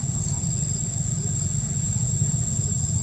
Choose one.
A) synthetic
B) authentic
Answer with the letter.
B